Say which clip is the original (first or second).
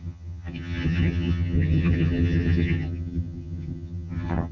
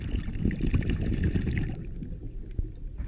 second